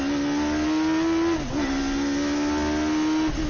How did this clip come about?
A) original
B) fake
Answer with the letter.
A